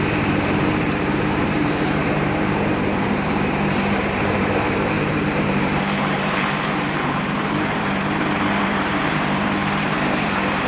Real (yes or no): no